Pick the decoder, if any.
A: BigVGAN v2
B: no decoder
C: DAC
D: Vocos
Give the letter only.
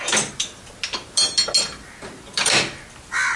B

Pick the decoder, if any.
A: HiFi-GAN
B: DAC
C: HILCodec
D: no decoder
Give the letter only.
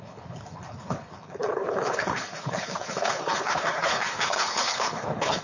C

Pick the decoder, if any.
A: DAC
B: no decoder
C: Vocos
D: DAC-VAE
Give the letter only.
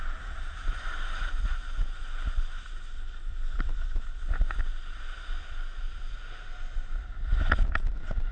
B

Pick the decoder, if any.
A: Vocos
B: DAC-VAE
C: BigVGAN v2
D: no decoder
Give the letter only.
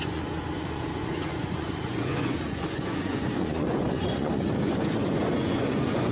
A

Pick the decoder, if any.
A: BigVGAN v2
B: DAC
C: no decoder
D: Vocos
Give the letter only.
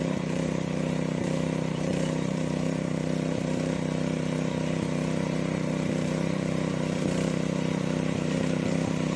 A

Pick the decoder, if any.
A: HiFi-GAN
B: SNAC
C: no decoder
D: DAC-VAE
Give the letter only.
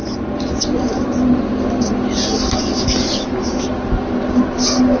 C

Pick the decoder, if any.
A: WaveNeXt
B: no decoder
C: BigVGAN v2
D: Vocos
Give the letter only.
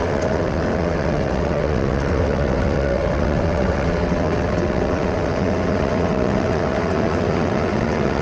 A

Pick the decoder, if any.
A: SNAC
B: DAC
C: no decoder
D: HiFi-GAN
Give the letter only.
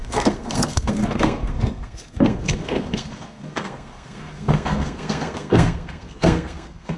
A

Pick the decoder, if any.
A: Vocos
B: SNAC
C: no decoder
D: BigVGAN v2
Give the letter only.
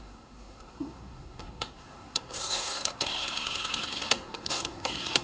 B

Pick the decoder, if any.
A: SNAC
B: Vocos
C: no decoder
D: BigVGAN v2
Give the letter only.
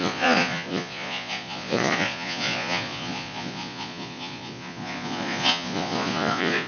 B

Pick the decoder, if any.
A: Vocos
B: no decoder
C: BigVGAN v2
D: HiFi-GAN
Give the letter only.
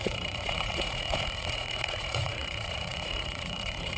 A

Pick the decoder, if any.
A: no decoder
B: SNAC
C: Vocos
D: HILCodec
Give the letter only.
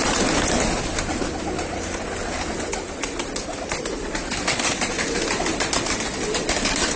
A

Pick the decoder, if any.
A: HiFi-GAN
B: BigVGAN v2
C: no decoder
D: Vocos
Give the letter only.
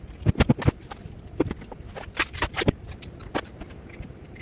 C